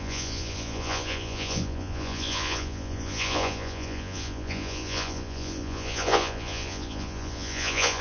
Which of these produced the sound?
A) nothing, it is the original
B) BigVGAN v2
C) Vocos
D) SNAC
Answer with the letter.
C